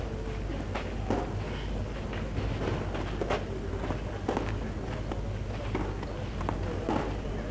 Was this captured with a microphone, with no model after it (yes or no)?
yes